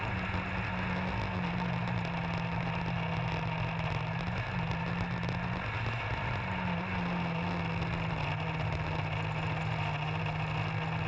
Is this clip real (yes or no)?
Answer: yes